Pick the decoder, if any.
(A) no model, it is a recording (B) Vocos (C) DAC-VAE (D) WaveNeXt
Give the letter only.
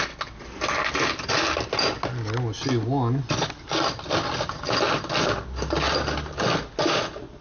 A